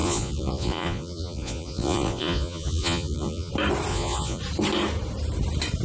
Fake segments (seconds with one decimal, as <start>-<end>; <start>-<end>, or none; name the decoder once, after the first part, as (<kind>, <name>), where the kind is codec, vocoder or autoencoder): 0.0-3.5 (vocoder, Vocos); 3.9-4.4